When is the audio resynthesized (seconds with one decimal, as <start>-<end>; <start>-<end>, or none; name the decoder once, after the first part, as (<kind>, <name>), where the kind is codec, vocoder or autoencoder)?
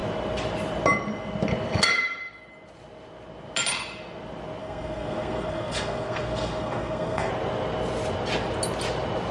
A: 4.6-7.3 (codec, SNAC)